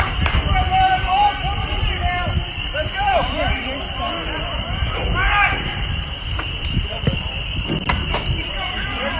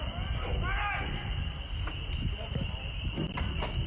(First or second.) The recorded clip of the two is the second